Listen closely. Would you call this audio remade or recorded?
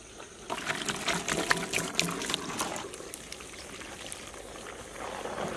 recorded